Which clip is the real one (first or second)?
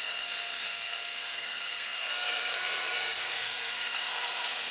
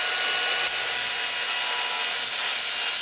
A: second